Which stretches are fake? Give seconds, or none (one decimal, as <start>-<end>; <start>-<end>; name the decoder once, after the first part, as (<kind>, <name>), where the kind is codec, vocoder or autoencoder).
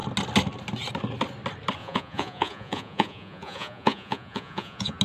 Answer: 1.8-5.0 (vocoder, Vocos)